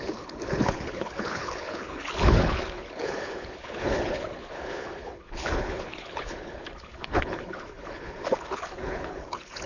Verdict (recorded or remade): remade